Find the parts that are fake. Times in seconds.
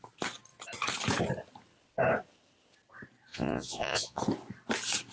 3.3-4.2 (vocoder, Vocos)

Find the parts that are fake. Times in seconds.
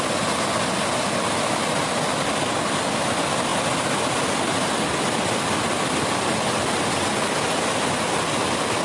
none